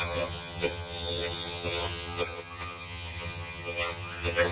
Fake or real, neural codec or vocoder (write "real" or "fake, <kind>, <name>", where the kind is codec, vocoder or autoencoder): fake, vocoder, HiFi-GAN